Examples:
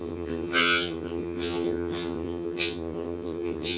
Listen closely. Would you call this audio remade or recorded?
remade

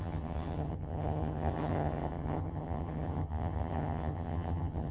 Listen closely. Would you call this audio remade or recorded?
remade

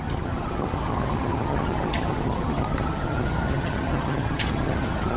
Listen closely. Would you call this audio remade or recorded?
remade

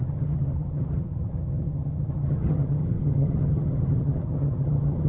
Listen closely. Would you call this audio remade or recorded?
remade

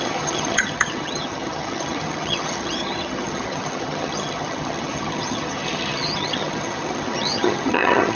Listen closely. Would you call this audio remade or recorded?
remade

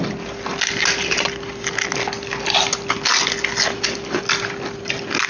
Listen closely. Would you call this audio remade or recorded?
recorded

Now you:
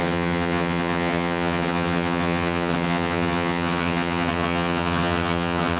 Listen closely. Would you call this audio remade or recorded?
remade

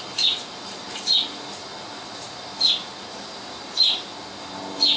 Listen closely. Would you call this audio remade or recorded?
recorded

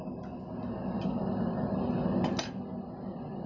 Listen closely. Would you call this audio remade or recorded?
recorded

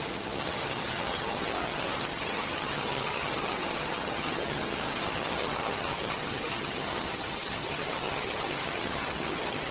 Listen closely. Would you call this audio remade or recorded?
remade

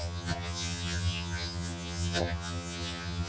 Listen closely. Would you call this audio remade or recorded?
remade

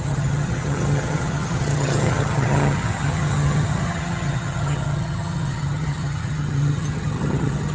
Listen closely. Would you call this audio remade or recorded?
remade